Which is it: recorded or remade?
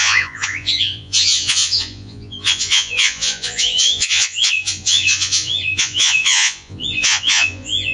remade